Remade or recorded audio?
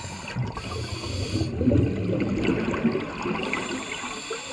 recorded